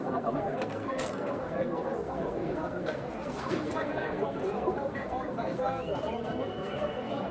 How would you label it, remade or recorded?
remade